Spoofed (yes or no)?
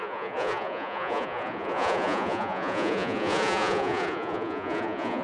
yes